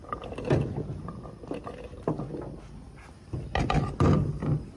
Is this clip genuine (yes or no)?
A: yes